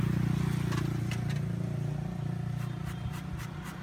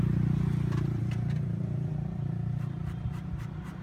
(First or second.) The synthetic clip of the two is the second